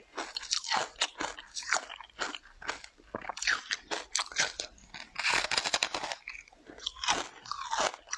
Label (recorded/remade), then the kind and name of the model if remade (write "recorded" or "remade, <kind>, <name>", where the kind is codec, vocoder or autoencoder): recorded